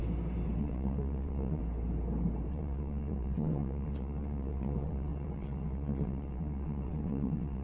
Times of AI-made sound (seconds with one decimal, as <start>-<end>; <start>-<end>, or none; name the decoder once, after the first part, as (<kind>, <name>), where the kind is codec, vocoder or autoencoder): 0.6-1.6 (vocoder, WaveNeXt); 2.5-7.6